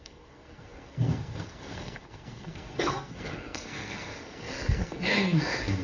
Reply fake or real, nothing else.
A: fake